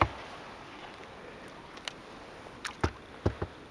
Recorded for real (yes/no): yes